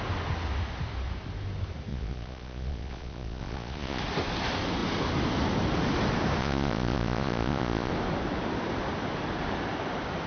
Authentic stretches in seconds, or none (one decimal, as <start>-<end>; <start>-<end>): 0.0-1.9; 4.0-6.4; 7.9-10.3